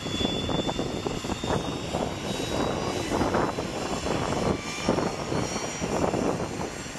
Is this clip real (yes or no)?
yes